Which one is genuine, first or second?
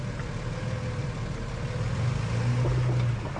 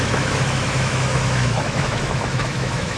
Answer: first